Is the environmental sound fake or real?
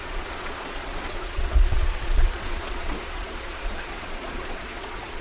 fake